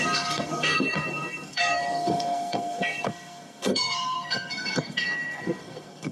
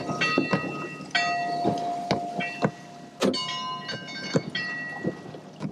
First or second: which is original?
second